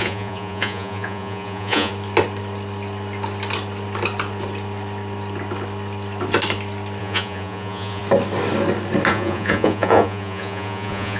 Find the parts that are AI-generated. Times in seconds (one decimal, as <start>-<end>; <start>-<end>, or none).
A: 0.0-1.9; 7.0-8.0; 9.1-11.2

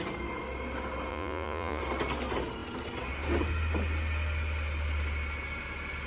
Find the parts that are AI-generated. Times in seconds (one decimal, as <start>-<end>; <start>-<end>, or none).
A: 1.1-1.8

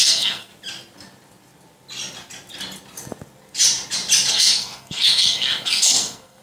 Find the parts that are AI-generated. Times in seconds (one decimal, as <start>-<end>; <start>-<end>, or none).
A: 0.0-0.5; 4.3-6.4

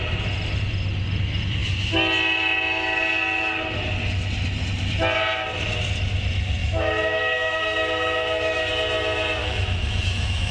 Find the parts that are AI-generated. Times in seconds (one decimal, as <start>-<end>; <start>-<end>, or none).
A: 6.6-8.7; 9.4-10.5

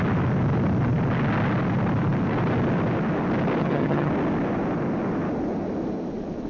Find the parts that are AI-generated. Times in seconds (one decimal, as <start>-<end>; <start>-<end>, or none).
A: 3.6-4.1